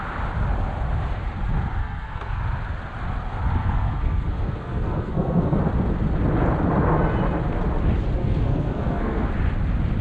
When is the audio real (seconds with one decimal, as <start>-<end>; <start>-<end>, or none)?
0.0-1.8; 2.4-3.6; 5.6-8.2; 9.3-10.0